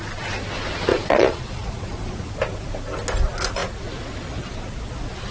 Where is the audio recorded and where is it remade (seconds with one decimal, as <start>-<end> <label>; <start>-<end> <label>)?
0.0-0.9 recorded; 0.9-2.3 remade; 2.3-5.3 recorded